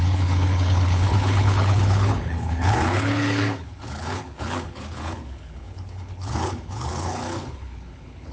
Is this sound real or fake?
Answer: fake